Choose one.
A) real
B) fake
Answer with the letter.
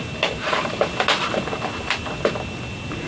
A